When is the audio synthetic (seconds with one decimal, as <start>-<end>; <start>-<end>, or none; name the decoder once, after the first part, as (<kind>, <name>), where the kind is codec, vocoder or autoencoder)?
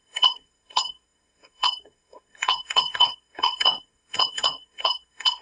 0.0-5.4 (codec, SNAC)